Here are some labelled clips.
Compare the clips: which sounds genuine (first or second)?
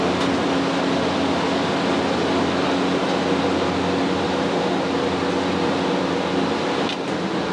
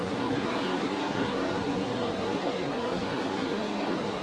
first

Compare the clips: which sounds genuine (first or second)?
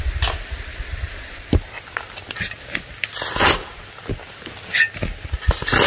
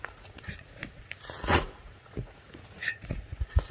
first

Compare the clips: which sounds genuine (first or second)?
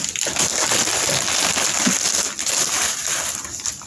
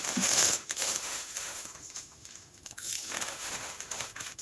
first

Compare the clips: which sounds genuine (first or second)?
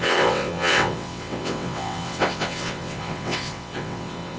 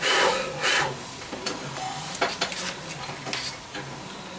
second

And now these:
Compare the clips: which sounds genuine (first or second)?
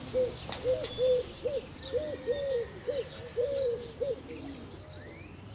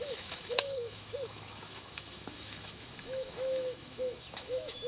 first